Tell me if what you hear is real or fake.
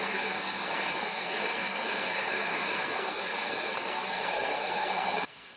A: fake